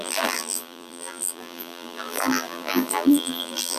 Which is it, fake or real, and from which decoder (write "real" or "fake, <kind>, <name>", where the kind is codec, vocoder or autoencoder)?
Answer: fake, vocoder, BigVGAN v2